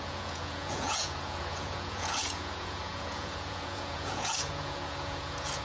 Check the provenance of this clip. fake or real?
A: fake